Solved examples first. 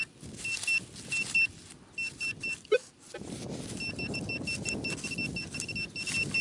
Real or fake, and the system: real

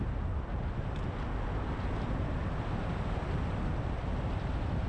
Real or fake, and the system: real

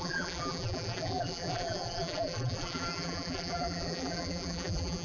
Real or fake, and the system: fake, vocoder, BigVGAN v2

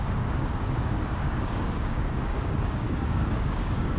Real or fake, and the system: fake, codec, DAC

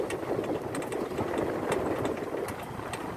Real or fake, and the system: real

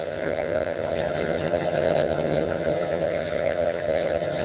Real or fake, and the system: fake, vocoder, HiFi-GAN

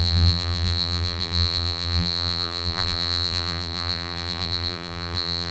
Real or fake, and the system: fake, vocoder, BigVGAN v2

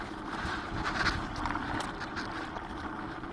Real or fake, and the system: real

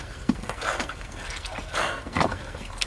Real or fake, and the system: fake, codec, SNAC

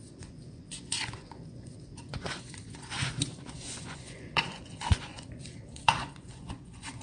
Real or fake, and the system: fake, vocoder, Vocos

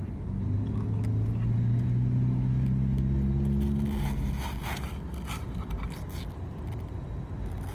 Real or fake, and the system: real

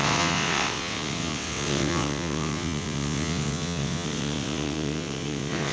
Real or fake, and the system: fake, vocoder, WaveNeXt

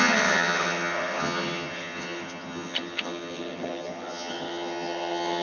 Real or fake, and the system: fake, vocoder, HiFi-GAN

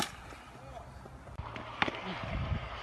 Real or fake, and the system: real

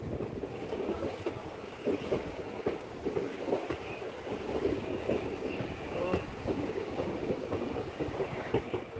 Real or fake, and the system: fake, codec, DAC